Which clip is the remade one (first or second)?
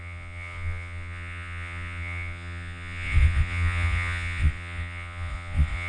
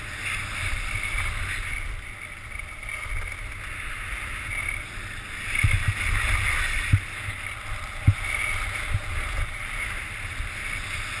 first